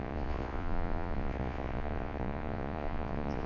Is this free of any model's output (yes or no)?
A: no